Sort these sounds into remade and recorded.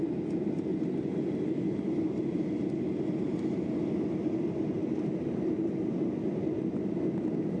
recorded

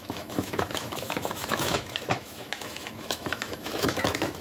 remade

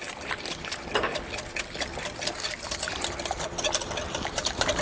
recorded